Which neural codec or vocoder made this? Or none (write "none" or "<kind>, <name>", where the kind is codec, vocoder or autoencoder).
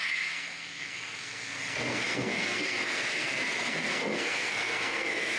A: codec, SNAC